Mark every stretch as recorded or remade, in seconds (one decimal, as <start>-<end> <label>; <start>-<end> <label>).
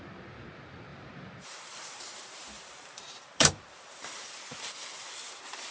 0.0-0.9 recorded; 0.9-4.3 remade; 4.3-5.7 recorded